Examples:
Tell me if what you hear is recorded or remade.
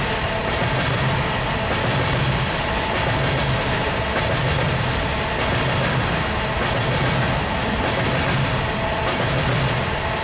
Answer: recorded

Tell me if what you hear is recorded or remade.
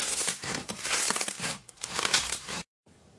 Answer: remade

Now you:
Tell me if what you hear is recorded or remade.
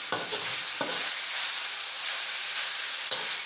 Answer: recorded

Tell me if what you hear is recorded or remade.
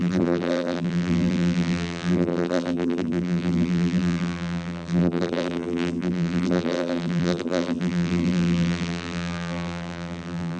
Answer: remade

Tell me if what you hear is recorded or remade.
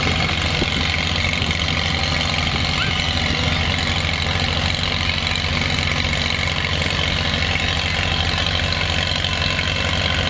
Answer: recorded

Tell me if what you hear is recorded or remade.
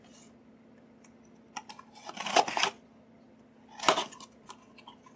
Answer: recorded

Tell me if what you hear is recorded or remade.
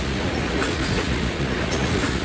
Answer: remade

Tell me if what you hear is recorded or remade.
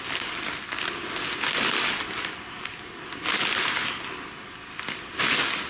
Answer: recorded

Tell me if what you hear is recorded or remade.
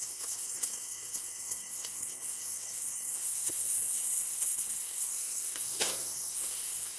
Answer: remade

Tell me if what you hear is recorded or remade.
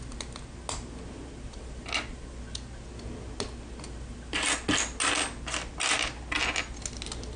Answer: recorded